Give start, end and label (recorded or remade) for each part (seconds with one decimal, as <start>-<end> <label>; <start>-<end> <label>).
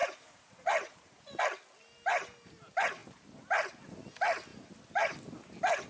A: 0.0-1.4 remade; 1.4-5.9 recorded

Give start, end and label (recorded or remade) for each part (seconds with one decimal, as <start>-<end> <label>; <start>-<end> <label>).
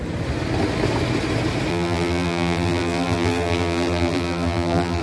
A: 0.0-1.7 recorded; 1.7-5.0 remade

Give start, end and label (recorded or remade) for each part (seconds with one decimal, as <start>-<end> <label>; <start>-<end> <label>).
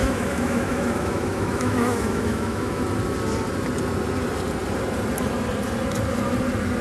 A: 0.0-2.8 remade; 2.8-6.8 recorded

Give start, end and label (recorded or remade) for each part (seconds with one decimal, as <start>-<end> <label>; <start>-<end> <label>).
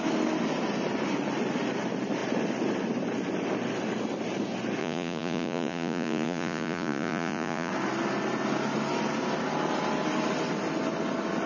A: 0.0-4.8 recorded; 4.8-7.7 remade; 7.7-11.5 recorded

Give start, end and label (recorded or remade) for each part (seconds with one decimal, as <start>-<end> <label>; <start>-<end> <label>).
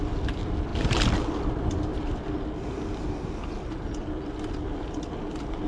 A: 0.0-5.7 recorded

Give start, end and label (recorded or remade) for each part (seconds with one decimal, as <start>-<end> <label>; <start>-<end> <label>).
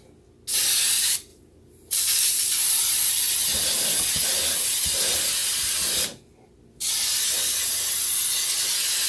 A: 0.0-1.3 recorded; 1.3-3.1 remade; 3.1-9.1 recorded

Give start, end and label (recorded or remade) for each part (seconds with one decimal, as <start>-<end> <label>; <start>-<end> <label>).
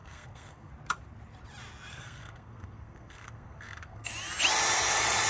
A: 0.0-0.7 remade; 0.7-1.9 recorded; 1.9-4.1 remade; 4.1-5.3 recorded